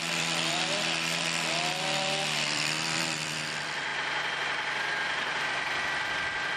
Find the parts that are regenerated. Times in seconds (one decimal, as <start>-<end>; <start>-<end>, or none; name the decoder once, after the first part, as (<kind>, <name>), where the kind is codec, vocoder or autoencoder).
0.0-3.9 (vocoder, BigVGAN v2); 5.4-6.6